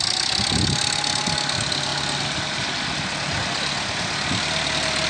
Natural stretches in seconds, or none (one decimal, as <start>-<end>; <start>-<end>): 0.0-5.1